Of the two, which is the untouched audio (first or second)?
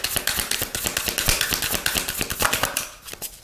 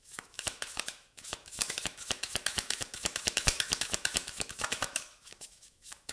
first